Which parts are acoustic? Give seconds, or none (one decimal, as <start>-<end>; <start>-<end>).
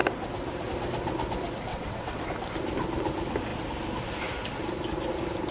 0.0-1.7; 2.3-5.5